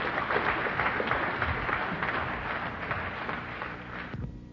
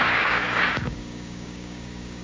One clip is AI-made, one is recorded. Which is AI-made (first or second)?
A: second